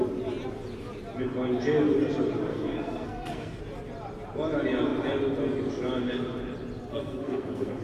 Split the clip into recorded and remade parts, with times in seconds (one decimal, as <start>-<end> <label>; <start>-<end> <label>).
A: 0.0-2.5 recorded; 2.5-3.6 remade; 3.6-6.9 recorded; 6.9-7.8 remade